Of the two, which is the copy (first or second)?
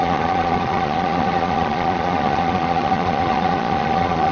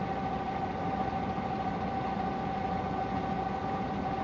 first